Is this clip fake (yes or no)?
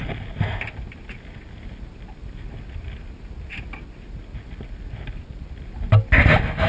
no